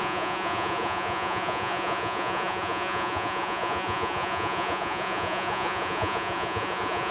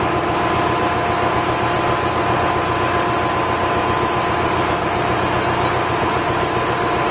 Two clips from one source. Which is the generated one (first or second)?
first